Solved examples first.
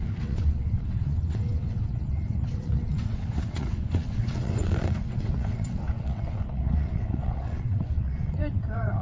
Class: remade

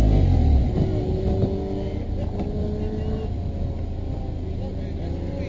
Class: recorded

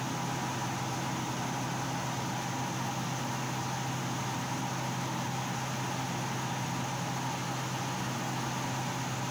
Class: recorded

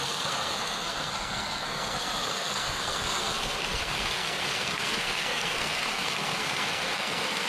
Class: remade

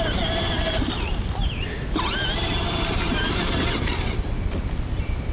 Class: remade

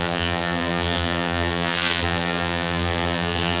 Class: remade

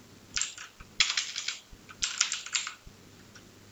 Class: recorded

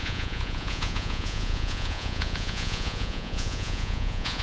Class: remade